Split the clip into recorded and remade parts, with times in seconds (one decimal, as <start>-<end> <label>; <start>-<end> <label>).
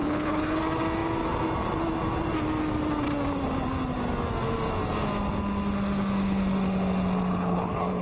0.0-0.6 remade; 0.6-7.3 recorded; 7.3-8.0 remade